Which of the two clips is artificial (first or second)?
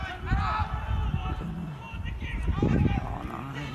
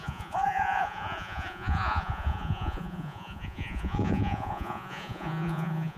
second